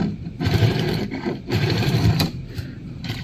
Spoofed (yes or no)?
yes